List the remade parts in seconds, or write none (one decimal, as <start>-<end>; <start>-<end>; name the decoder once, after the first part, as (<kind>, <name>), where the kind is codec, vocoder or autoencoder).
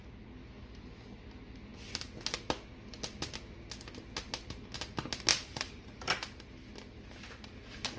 5.3-6.1 (vocoder, BigVGAN v2)